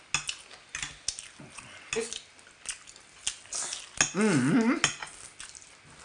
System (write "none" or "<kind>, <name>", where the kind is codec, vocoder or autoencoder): none